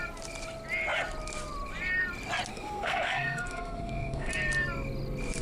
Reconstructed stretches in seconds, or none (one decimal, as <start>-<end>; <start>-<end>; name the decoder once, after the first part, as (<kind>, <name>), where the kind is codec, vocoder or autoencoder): 2.5-4.3 (codec, SNAC)